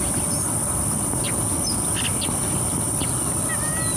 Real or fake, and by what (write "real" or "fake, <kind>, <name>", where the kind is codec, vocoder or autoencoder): real